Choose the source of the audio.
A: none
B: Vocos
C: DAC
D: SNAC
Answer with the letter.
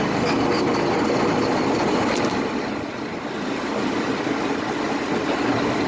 A